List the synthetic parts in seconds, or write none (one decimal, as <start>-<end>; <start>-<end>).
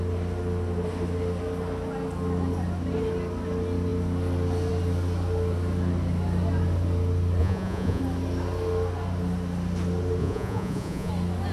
7.4-8.0; 10.2-11.1